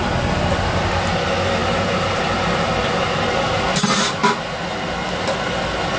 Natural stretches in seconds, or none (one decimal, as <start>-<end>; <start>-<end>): 0.0-6.0